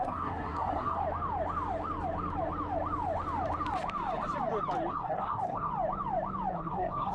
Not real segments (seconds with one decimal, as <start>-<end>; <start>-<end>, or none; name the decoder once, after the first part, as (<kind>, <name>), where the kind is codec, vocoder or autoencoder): 0.0-1.0 (codec, SNAC); 4.9-5.7; 6.5-7.1